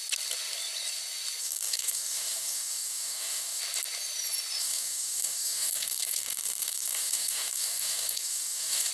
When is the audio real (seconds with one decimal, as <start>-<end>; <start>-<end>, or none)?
0.0-1.4; 3.6-4.6